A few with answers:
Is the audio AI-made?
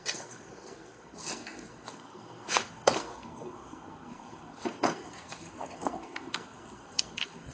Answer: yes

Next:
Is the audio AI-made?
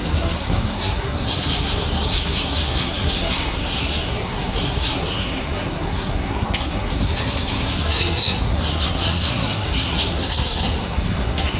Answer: yes